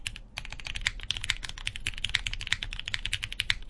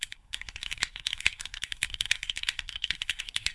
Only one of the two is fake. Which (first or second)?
second